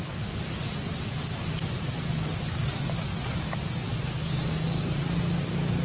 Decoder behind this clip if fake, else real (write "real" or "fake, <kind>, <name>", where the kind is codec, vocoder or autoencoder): real